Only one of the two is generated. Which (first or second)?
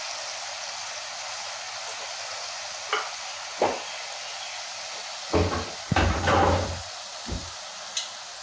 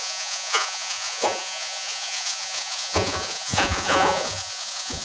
second